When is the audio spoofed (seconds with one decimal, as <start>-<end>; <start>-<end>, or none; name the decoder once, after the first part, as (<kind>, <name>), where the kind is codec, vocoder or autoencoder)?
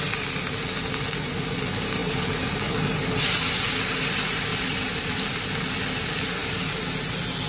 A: none